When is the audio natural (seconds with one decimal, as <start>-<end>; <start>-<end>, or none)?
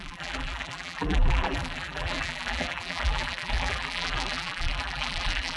none